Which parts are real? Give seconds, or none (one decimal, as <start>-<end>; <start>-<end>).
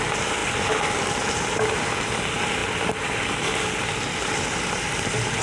0.0-5.4